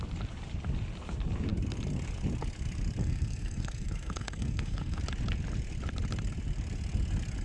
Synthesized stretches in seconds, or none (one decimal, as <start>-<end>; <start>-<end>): 3.0-5.0